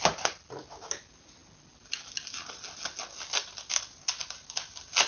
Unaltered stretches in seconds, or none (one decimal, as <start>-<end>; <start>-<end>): 0.0-5.1